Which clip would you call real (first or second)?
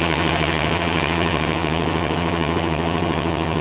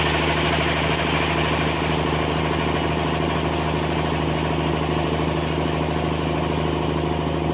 second